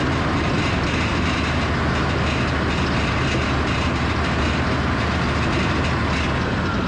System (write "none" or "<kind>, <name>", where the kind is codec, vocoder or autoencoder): none